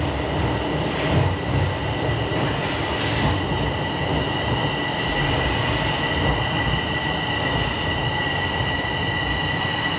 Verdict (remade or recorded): recorded